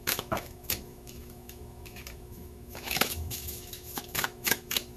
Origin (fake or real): fake